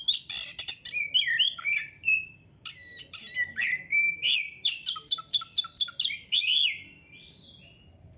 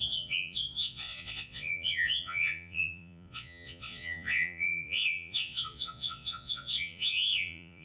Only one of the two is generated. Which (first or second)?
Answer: second